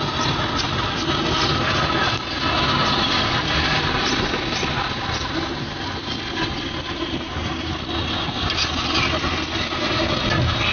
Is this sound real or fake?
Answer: real